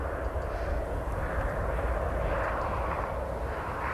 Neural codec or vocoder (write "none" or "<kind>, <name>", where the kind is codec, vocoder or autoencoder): none